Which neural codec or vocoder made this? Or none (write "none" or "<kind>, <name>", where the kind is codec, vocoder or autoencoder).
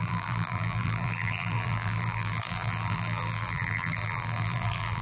vocoder, BigVGAN v2